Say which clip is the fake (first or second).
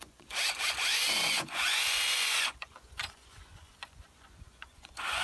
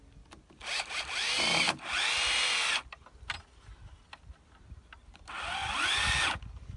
first